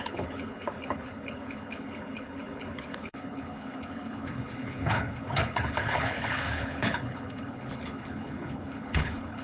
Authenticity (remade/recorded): remade